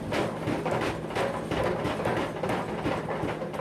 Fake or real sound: real